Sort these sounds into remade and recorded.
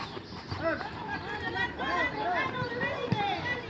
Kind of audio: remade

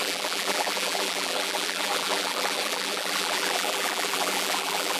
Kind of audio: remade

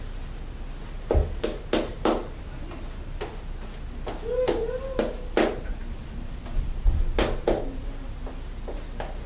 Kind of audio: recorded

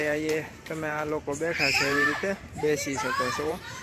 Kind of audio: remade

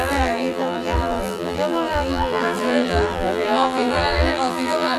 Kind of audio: remade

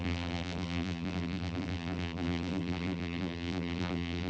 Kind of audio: remade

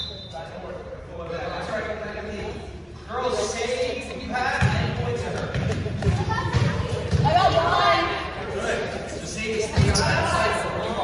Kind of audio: remade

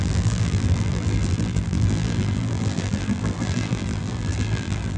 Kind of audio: remade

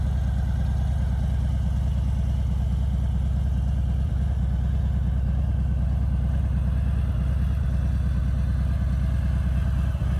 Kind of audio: recorded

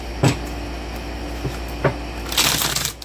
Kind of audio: recorded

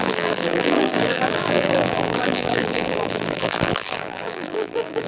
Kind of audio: remade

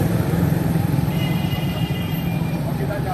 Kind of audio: remade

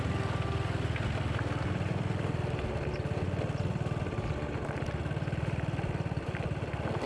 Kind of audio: recorded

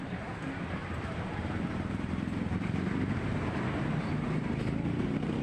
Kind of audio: remade